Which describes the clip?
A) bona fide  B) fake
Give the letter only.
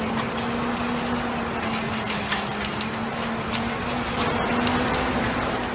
A